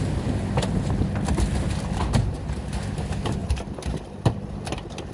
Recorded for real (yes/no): yes